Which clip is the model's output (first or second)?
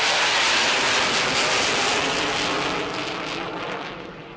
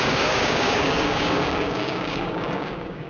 second